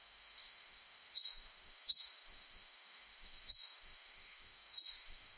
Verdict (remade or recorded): remade